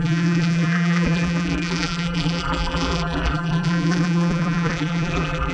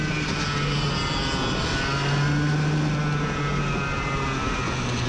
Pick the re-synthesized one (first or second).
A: first